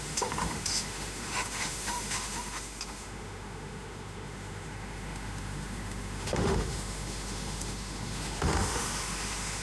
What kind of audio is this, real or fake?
fake